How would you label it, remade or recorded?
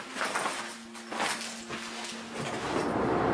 recorded